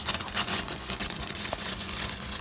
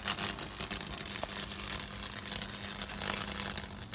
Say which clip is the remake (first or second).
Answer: first